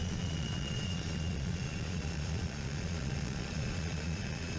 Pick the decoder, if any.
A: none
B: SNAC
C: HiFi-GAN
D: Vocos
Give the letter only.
D